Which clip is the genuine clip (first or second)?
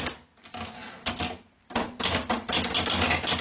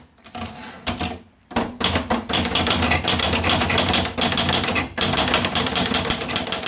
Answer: first